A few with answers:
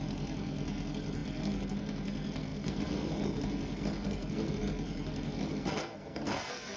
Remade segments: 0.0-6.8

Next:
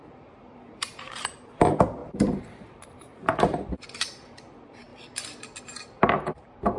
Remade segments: 0.0-4.9; 5.6-6.8

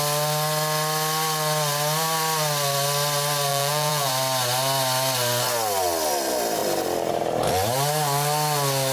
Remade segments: 3.5-4.1

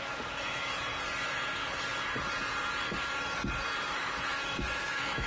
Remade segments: 0.0-0.7; 3.9-5.3

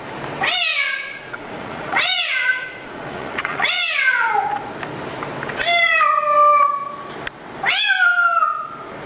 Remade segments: 0.7-4.3

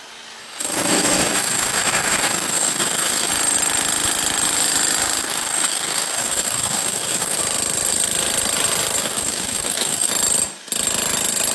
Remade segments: 0.4-3.3; 5.2-7.4; 9.0-10.1

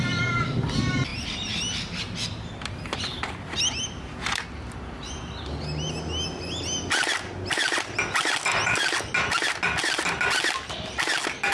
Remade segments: none

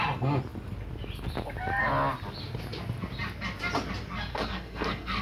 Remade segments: 4.3-5.2